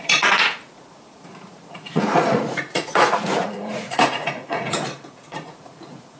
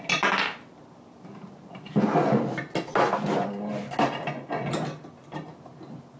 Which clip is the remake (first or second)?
first